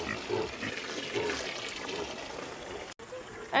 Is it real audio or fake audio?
real